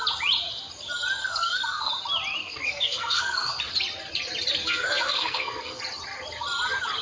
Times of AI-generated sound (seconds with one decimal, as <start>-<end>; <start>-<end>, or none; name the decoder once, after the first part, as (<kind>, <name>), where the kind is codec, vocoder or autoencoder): 1.2-1.9 (codec, SNAC); 2.4-3.6; 4.6-5.8